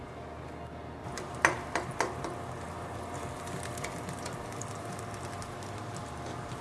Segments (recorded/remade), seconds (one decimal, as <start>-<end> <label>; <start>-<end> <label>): 0.0-1.0 recorded; 1.0-5.0 remade; 5.0-6.6 recorded

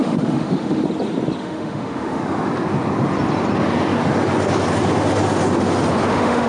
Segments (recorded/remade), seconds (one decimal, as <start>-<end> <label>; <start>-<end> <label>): 0.0-0.8 remade; 0.8-1.4 recorded; 1.4-2.2 remade; 2.2-6.1 recorded; 6.1-6.5 remade

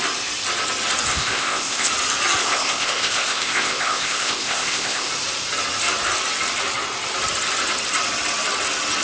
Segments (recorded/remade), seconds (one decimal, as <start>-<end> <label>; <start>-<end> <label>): 0.0-1.1 recorded; 1.1-1.9 remade; 1.9-2.4 recorded; 2.4-5.1 remade; 5.1-9.0 recorded

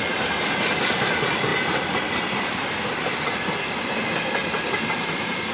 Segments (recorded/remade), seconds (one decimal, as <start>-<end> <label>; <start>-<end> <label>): 0.0-5.5 recorded

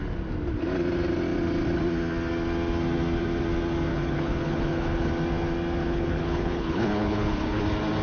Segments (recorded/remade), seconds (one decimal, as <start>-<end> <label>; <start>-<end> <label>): 0.0-3.9 recorded; 3.9-5.1 remade; 5.1-5.8 recorded; 5.8-7.6 remade; 7.6-8.0 recorded